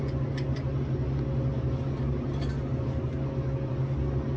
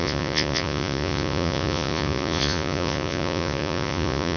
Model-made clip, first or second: second